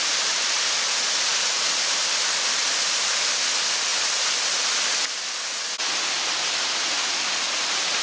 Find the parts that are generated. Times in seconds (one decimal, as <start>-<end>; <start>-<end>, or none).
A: 1.3-2.1; 3.9-4.7